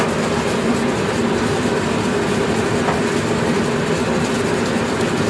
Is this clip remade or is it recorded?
recorded